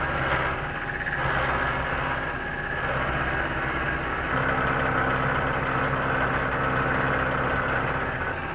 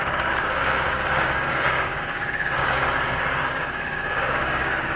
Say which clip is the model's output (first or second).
second